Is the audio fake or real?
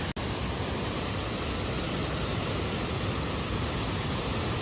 real